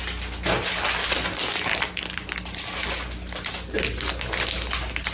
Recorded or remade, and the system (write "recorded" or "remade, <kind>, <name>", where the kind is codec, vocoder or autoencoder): recorded